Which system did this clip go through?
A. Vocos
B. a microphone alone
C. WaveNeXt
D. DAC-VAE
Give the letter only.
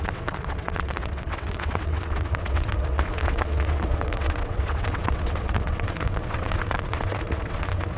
C